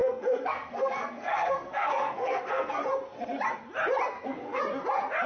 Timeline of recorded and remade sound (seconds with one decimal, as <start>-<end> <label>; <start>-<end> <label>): 0.0-2.8 remade; 2.8-4.1 recorded; 4.1-4.6 remade; 4.6-5.3 recorded